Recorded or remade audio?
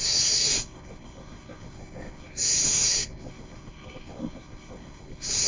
remade